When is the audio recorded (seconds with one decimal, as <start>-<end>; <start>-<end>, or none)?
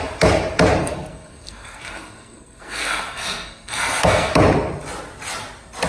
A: 0.0-0.8; 4.3-5.9